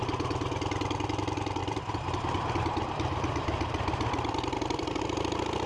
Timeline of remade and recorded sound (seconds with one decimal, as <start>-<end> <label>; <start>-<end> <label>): 0.0-1.6 recorded; 1.6-5.0 remade; 5.0-5.7 recorded